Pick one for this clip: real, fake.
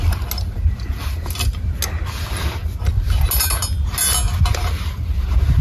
real